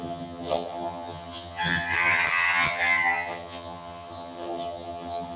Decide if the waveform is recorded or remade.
remade